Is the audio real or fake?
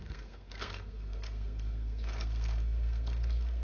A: fake